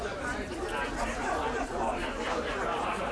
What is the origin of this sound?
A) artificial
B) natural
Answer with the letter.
A